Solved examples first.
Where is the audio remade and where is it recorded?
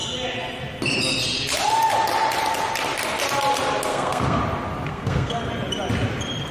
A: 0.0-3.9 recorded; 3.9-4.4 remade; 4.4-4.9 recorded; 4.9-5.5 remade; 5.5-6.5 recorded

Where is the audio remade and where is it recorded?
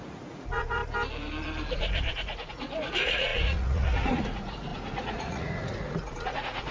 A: 0.0-0.8 remade; 0.8-1.7 recorded; 1.7-6.7 remade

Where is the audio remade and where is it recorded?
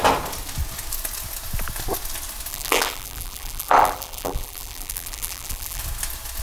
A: 0.0-2.5 recorded; 2.5-5.8 remade; 5.8-6.4 recorded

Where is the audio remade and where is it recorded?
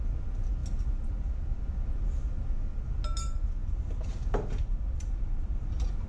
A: 0.0-3.6 recorded; 3.6-6.1 remade